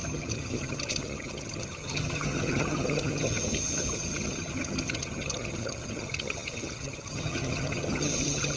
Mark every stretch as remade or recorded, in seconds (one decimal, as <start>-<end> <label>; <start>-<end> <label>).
0.0-8.6 remade

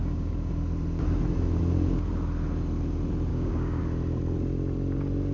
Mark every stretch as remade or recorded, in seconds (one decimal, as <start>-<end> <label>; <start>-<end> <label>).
0.0-0.5 remade; 0.5-3.3 recorded; 3.3-3.8 remade; 3.8-5.3 recorded

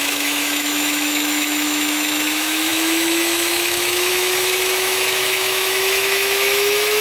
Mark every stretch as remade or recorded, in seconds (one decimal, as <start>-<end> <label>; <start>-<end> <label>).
0.0-7.0 remade

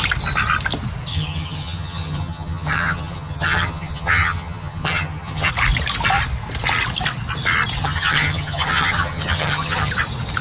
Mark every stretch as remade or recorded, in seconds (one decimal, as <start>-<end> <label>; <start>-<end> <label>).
0.0-1.1 recorded; 1.1-5.5 remade; 5.5-7.8 recorded; 7.8-9.9 remade; 9.9-10.4 recorded

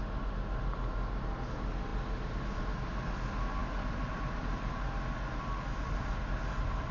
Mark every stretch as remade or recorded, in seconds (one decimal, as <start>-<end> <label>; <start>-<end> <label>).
0.0-6.9 recorded